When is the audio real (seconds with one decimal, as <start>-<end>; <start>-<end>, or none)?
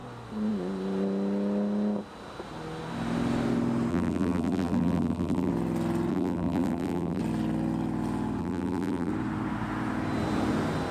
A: 0.0-3.9; 5.5-6.1; 7.2-8.4; 9.1-10.9